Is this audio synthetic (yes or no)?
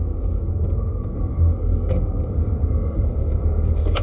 yes